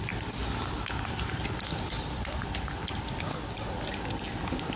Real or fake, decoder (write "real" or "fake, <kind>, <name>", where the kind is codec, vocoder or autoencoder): real